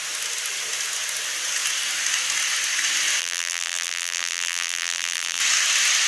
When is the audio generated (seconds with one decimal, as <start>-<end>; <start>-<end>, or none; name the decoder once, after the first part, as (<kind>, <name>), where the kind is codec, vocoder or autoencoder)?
3.2-5.4 (vocoder, BigVGAN v2)